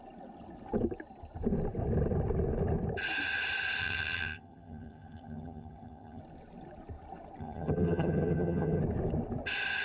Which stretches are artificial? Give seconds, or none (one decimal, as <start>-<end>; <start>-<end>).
3.8-6.2; 7.4-8.8